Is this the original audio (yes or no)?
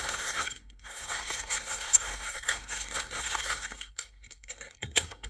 no